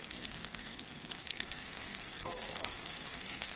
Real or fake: fake